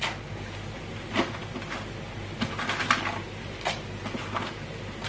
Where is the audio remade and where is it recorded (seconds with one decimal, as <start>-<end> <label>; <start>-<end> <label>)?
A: 0.0-5.1 recorded